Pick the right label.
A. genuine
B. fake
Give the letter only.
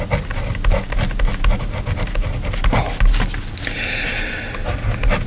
A